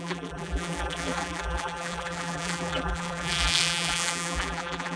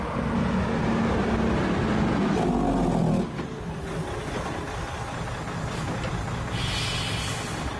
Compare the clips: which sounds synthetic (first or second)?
first